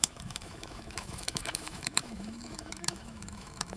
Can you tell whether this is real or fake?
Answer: fake